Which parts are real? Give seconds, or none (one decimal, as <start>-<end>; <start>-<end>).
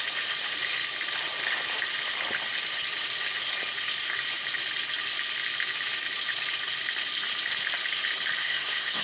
0.0-8.4